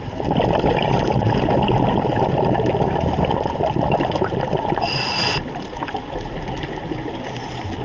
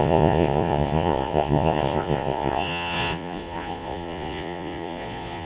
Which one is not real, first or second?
second